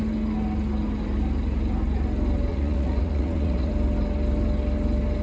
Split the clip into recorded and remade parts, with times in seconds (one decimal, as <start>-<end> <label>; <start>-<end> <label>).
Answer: 0.0-2.5 recorded; 2.5-3.7 remade; 3.7-5.2 recorded